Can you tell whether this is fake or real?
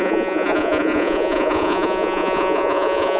fake